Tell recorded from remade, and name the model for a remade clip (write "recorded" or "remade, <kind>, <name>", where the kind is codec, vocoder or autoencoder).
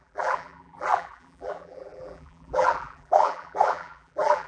remade, vocoder, BigVGAN v2